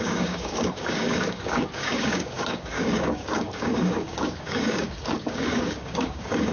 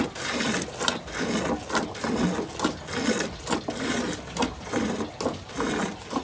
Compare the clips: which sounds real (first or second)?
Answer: second